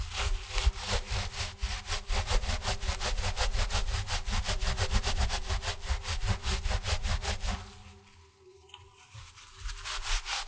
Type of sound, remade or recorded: recorded